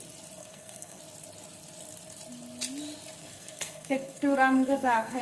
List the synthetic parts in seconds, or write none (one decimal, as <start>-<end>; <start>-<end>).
0.4-1.0; 3.2-5.2